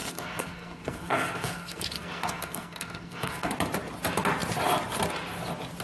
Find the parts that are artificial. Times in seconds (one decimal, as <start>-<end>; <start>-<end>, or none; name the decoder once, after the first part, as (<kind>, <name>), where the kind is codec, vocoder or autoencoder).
0.0-3.5 (codec, SNAC)